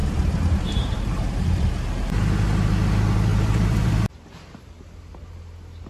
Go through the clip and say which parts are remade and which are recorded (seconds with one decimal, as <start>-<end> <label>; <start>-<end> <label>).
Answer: 0.0-1.7 remade; 1.7-3.3 recorded; 3.3-3.9 remade; 3.9-5.9 recorded